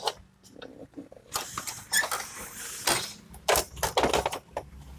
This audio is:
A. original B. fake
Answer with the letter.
A